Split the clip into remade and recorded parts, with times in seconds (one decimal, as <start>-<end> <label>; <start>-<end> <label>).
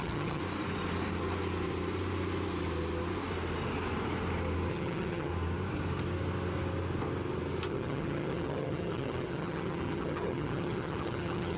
0.0-0.4 remade; 0.4-4.7 recorded; 4.7-5.3 remade; 5.3-7.7 recorded; 7.7-11.6 remade